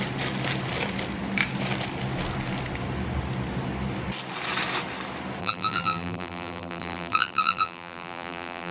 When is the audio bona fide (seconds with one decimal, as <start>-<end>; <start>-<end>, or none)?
0.0-5.4